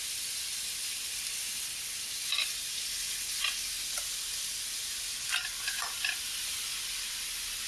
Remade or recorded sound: recorded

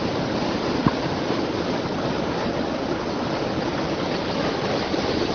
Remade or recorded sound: recorded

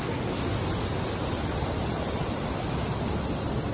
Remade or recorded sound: recorded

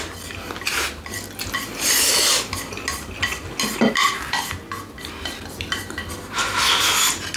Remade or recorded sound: recorded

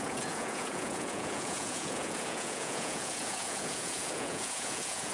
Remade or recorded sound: remade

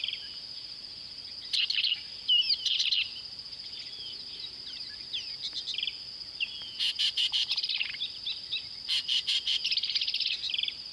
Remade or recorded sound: recorded